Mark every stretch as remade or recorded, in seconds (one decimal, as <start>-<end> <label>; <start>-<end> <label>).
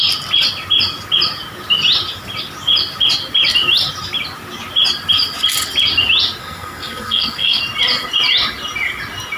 0.0-6.4 recorded; 6.4-7.6 remade; 7.6-9.4 recorded